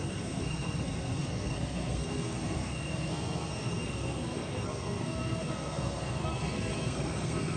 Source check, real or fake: fake